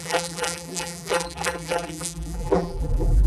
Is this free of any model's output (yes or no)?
no